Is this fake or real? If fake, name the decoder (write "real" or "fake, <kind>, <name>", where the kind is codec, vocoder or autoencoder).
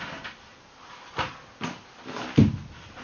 real